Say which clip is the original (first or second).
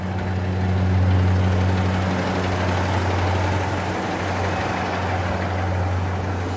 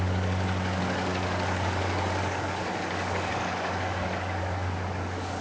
first